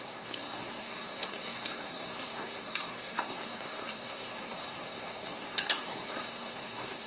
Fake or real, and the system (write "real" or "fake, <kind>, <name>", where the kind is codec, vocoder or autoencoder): fake, codec, SNAC